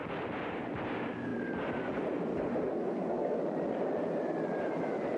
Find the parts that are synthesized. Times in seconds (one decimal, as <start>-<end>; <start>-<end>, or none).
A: 2.7-3.4